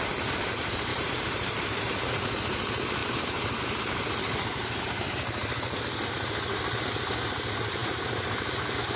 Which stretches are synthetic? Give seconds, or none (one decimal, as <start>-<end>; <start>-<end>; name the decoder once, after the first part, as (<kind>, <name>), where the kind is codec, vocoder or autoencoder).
0.9-1.9 (vocoder, BigVGAN v2); 3.0-3.6; 7.8-8.5